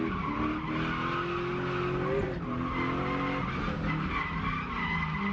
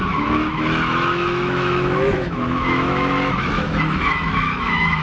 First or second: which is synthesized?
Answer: second